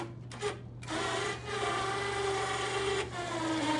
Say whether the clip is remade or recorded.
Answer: recorded